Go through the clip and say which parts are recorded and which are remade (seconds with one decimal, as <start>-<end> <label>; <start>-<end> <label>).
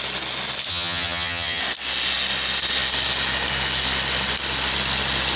0.0-0.7 recorded; 0.7-1.6 remade; 1.6-5.4 recorded